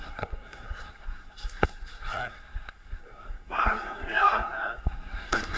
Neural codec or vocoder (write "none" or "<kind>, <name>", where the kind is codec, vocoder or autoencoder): codec, SNAC